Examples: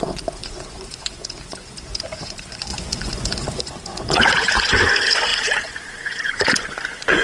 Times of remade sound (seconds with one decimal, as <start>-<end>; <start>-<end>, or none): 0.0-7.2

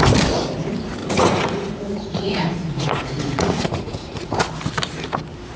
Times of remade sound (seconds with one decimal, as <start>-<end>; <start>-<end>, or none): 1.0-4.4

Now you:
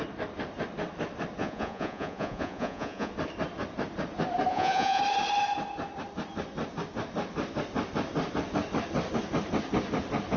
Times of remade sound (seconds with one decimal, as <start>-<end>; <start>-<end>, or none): 1.4-3.1; 4.5-5.0